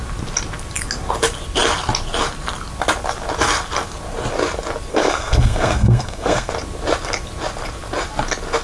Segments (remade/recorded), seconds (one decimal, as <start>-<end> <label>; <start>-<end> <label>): 0.0-4.9 recorded; 4.9-6.5 remade; 6.5-8.6 recorded